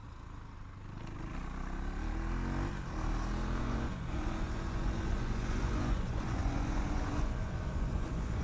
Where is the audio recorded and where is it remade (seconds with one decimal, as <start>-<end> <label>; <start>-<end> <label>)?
0.0-3.6 recorded; 3.6-8.4 remade

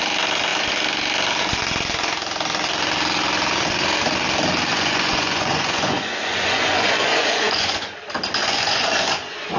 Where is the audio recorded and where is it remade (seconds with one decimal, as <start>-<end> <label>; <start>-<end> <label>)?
0.0-4.7 recorded; 4.7-8.0 remade; 8.0-8.4 recorded; 8.4-9.6 remade

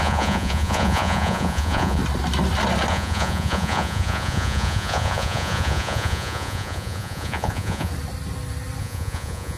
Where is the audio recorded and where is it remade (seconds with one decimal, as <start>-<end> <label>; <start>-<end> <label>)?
0.0-2.0 remade; 2.0-2.9 recorded; 2.9-7.9 remade; 7.9-8.8 recorded; 8.8-9.6 remade

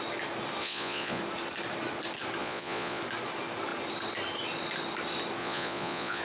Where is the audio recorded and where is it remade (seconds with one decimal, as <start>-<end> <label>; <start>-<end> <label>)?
0.0-0.6 recorded; 0.6-1.2 remade; 1.2-2.4 recorded; 2.4-3.0 remade; 3.0-5.4 recorded; 5.4-6.2 remade